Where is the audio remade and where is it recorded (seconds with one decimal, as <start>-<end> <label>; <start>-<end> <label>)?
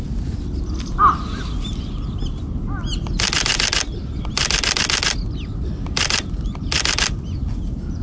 0.0-8.0 recorded